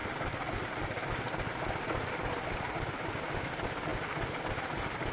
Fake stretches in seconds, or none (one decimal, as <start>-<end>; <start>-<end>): 0.0-3.1; 3.9-5.1